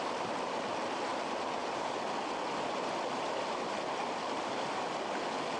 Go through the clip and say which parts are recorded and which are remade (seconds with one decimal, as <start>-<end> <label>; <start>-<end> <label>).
0.0-5.6 recorded